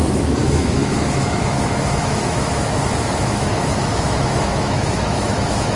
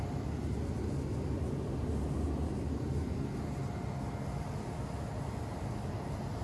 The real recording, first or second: second